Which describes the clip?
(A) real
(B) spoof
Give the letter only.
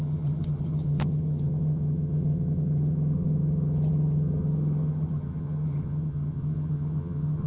B